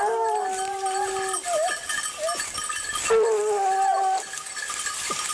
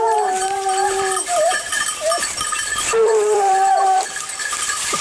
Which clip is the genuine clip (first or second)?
first